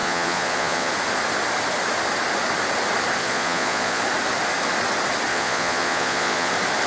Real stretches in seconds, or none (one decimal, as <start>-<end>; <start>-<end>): 0.9-3.2; 4.0-5.3; 6.5-6.9